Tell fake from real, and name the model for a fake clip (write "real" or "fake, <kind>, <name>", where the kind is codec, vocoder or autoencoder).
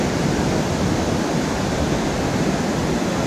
real